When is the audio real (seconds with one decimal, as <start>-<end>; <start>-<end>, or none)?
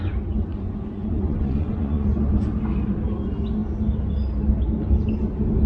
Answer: 0.0-0.5; 2.1-5.7